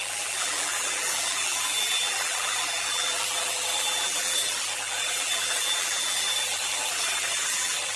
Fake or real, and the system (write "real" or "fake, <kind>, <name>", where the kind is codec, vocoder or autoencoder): fake, vocoder, BigVGAN v2